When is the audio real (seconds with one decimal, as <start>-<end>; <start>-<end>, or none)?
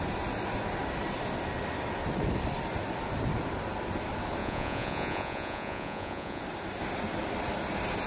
0.0-4.4; 6.4-8.1